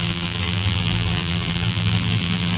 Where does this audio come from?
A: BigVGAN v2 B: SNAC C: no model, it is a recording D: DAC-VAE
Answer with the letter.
A